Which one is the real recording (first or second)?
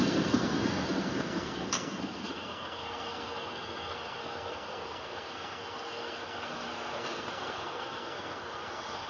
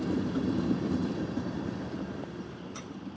second